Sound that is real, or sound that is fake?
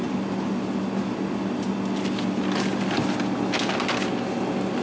real